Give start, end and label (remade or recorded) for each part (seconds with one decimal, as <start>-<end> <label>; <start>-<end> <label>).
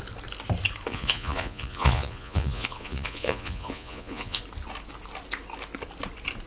0.0-0.9 recorded; 0.9-4.4 remade; 4.4-6.5 recorded